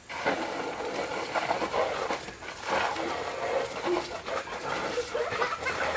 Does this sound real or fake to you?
real